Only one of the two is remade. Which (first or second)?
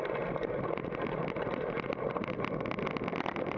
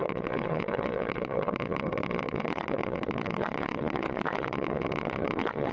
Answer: second